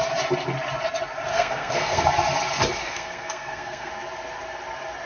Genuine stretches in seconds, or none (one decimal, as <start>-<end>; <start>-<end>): 0.0-1.3; 2.0-2.8; 3.9-5.1